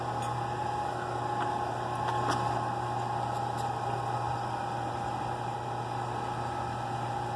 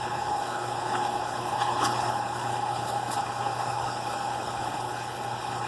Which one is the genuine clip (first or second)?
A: first